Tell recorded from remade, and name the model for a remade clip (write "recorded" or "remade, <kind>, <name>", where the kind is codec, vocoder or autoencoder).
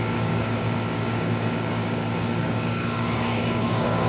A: remade, codec, DAC